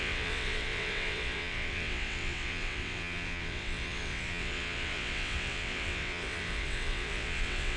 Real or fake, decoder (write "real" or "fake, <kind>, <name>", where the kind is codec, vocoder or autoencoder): fake, vocoder, WaveNeXt